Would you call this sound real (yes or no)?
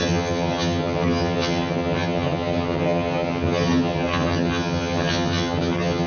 no